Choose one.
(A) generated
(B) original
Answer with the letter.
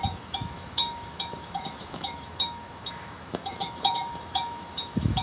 A